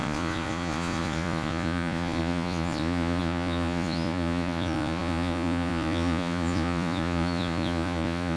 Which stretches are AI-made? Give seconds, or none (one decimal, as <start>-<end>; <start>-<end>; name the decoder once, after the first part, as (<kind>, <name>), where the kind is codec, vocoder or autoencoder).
0.0-8.4 (vocoder, Vocos)